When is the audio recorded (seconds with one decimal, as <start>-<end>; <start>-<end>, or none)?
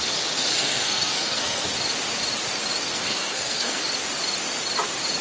0.0-0.5; 1.7-2.9; 3.8-5.2